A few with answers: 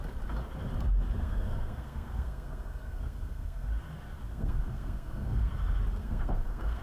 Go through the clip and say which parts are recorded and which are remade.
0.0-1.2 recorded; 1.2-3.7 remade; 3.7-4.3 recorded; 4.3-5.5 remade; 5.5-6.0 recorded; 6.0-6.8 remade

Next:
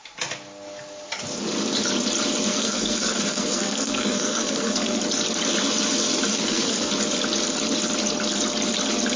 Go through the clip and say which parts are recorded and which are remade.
0.0-2.5 recorded; 2.5-5.0 remade; 5.0-6.3 recorded; 6.3-6.9 remade; 6.9-9.2 recorded